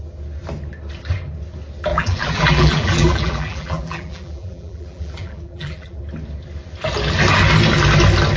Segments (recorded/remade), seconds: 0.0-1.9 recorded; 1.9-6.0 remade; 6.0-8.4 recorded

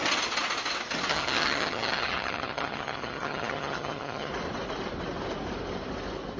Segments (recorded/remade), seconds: 0.0-1.1 recorded; 1.1-4.3 remade; 4.3-6.4 recorded

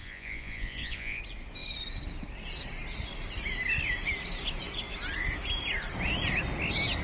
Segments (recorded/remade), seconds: 0.0-1.2 remade; 1.2-7.0 recorded

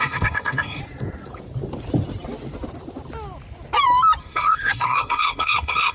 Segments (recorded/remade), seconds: 0.0-0.8 remade; 0.8-4.2 recorded; 4.2-5.9 remade

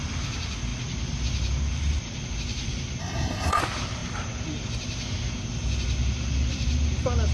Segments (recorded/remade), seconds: 0.0-3.0 recorded; 3.0-3.6 remade; 3.6-7.3 recorded

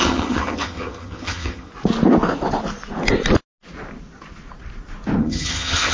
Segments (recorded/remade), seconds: 0.0-1.7 remade; 1.7-5.2 recorded; 5.2-5.9 remade